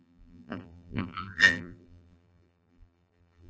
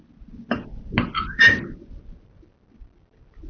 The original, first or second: second